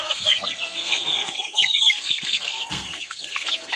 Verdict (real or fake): fake